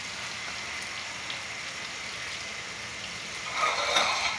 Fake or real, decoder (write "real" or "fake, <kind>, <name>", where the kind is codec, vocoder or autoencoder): real